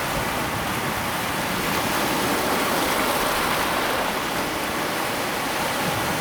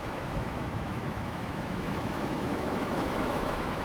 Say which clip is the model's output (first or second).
second